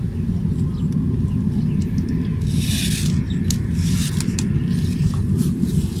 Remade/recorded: recorded